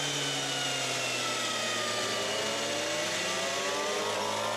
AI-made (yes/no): no